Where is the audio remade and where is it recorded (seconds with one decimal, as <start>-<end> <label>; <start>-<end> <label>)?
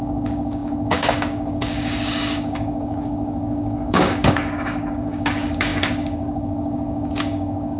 0.0-7.8 remade